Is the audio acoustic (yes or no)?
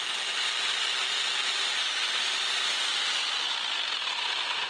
yes